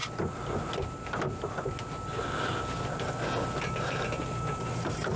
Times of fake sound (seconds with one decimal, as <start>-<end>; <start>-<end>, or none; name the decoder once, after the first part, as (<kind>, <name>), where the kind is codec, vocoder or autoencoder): none